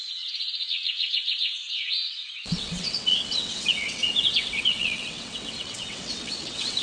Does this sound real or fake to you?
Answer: fake